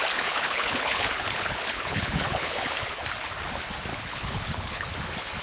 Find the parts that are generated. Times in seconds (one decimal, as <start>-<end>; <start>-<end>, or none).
0.0-3.0; 3.9-4.8